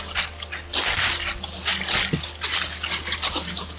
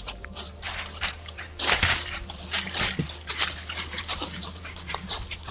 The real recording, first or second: first